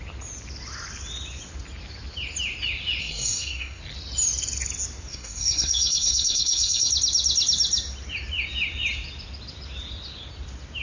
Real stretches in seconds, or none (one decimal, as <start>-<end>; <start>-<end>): 0.0-3.0; 3.8-5.1; 6.9-10.8